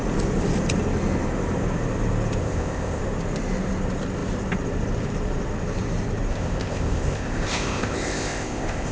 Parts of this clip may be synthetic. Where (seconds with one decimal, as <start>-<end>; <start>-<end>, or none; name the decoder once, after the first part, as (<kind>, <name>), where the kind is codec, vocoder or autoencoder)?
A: 2.4-3.0 (codec, ZipCodec); 6.3-8.9